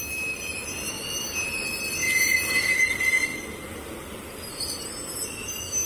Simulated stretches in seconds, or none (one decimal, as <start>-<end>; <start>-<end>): none